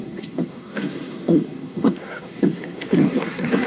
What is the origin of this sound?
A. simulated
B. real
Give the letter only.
A